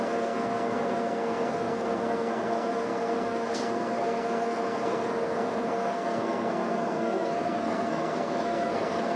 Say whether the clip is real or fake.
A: fake